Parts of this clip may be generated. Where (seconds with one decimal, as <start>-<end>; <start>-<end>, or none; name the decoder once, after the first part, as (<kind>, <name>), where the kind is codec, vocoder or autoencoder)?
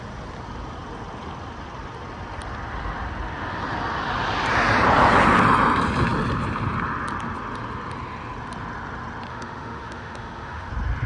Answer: 9.3-10.7 (autoencoder, DAC-VAE)